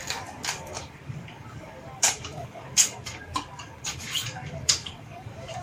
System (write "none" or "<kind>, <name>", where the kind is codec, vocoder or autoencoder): codec, DAC